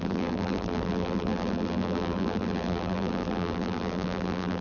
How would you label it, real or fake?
fake